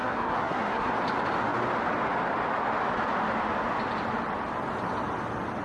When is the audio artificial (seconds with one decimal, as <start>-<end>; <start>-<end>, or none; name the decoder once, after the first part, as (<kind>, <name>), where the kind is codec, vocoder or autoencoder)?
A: 0.0-0.9 (codec, SNAC)